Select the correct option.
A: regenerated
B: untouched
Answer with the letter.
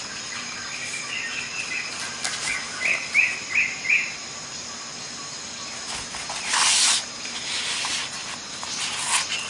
B